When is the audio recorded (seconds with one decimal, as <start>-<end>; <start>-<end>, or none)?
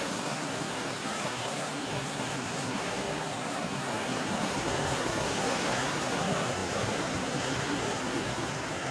none